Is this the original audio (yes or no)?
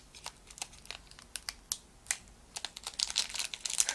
yes